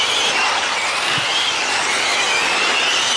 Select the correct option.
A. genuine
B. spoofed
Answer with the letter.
A